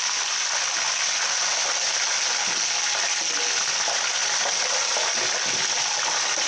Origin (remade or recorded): recorded